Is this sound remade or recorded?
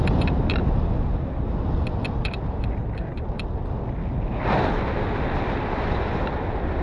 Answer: recorded